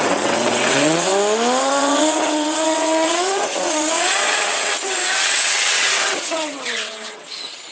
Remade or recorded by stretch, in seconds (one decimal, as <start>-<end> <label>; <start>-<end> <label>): 0.0-1.1 remade; 1.1-1.6 recorded; 1.6-7.7 remade